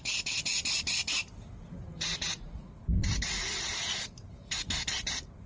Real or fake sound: real